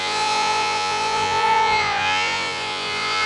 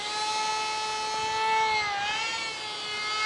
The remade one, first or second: first